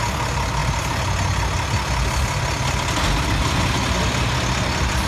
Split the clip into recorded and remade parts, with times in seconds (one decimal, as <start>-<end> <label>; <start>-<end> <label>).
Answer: 0.0-5.1 recorded